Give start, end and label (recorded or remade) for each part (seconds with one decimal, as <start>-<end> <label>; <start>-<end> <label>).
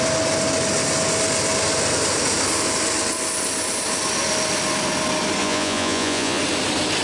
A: 0.0-5.4 recorded; 5.4-6.4 remade; 6.4-7.0 recorded